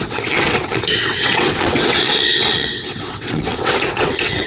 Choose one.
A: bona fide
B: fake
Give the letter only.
B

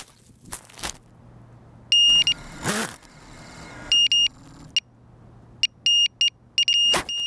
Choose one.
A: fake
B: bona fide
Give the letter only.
B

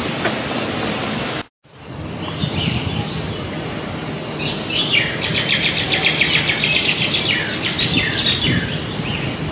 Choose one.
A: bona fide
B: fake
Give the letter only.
A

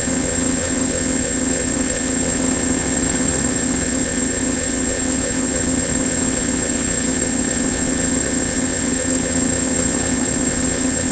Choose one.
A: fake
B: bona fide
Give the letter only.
A